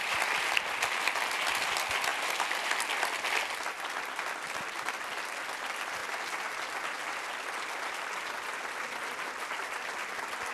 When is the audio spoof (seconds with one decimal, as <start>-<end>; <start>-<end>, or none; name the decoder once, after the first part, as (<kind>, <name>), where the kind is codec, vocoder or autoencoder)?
none